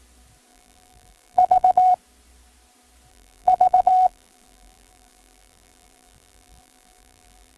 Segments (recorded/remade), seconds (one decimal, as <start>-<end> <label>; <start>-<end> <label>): 0.0-0.5 recorded; 0.5-1.9 remade; 1.9-3.1 recorded; 3.1-7.6 remade